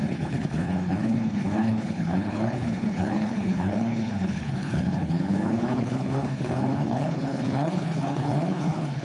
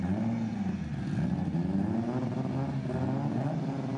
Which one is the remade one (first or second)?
first